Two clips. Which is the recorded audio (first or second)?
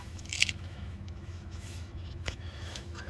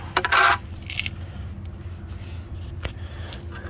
second